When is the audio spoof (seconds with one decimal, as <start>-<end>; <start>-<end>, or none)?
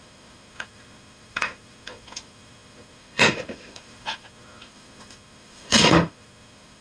0.0-6.8